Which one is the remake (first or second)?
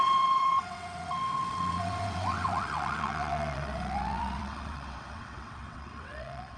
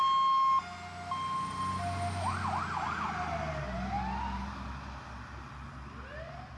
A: first